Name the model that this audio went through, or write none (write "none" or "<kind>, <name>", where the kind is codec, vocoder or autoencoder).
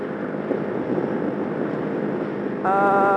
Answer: none